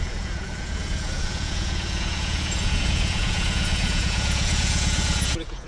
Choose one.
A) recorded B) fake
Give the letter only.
B